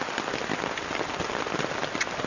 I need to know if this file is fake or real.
real